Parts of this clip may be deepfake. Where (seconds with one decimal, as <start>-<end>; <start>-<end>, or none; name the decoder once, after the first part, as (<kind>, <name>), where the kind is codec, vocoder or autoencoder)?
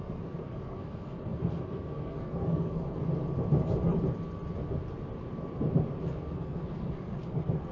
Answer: 0.0-3.1 (codec, SNAC); 6.0-7.7